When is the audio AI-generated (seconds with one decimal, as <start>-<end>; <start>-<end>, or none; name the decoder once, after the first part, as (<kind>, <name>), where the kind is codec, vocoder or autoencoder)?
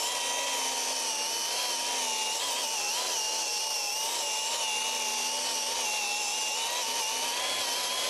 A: none